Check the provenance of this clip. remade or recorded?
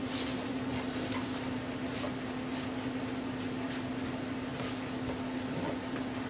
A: recorded